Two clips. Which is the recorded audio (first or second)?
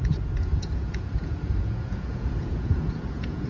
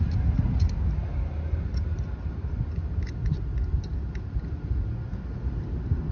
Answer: second